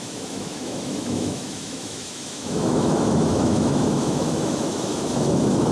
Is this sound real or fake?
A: fake